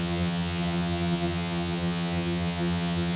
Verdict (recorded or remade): remade